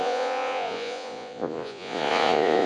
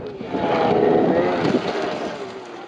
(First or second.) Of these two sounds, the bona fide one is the second